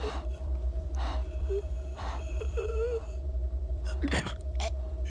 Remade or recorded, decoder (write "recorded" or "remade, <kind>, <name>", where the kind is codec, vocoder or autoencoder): remade, vocoder, BigVGAN v2